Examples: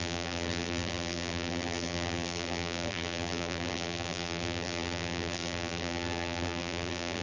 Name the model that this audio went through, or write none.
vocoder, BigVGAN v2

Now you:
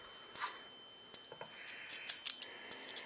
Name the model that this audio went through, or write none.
none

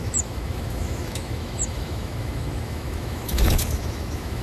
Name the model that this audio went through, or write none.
autoencoder, DAC-VAE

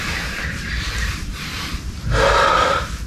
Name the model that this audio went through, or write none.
vocoder, BigVGAN v2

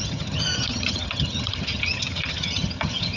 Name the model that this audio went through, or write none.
vocoder, HiFi-GAN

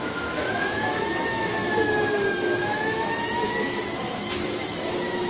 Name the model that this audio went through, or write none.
autoencoder, DAC-VAE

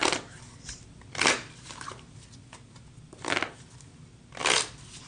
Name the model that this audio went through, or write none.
none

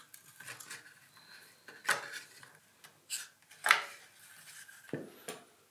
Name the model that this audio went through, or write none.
none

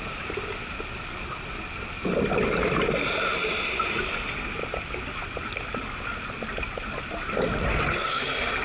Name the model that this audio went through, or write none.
vocoder, BigVGAN v2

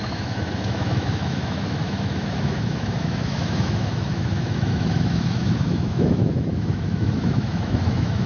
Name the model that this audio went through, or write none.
autoencoder, DAC-VAE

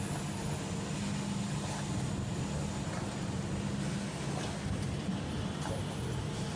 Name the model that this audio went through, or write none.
none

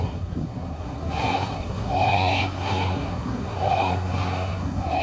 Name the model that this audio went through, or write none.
codec, SNAC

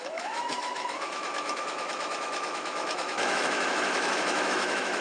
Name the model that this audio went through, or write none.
autoencoder, DAC-VAE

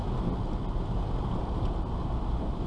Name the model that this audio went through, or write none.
none